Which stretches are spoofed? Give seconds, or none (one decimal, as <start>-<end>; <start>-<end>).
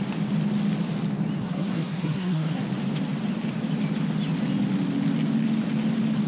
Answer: 1.4-2.6